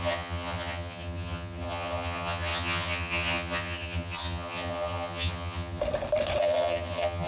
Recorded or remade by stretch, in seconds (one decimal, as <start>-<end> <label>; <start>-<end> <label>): 0.0-5.8 remade; 5.8-6.4 recorded; 6.4-7.3 remade